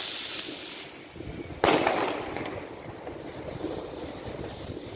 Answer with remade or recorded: recorded